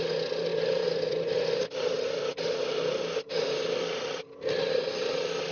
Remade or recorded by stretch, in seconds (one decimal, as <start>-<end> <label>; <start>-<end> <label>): 0.0-5.5 recorded